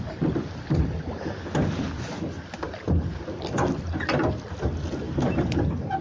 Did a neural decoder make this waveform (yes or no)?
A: no